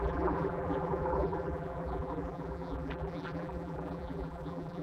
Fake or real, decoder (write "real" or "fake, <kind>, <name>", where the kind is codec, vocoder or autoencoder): fake, vocoder, BigVGAN v2